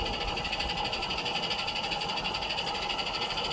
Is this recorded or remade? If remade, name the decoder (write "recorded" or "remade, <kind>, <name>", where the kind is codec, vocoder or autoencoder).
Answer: recorded